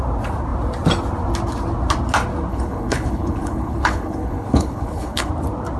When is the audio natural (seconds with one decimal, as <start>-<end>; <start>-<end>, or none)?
0.0-2.5; 5.3-5.8